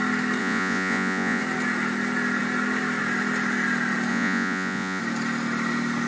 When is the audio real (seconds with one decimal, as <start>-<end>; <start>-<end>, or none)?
0.0-0.4; 1.4-4.1; 5.0-6.1